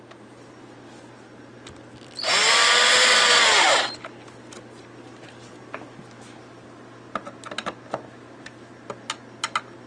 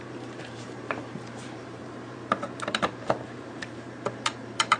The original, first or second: first